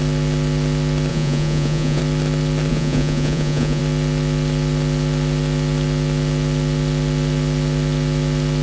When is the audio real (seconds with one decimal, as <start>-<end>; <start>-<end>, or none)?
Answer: 0.0-1.1; 2.0-2.7; 3.8-8.6